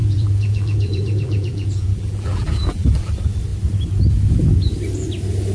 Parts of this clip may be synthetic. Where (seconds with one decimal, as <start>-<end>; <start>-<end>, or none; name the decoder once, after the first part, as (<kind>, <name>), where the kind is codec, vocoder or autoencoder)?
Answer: 0.0-3.1 (vocoder, BigVGAN v2)